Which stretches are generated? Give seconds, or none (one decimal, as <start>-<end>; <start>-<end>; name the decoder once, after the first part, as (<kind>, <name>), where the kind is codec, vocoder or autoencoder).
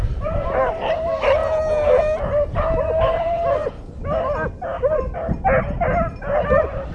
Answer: 0.0-1.4 (vocoder, BigVGAN v2); 1.9-3.6; 4.8-5.2